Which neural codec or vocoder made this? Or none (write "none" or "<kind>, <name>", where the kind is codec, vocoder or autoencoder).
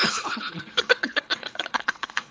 codec, HILCodec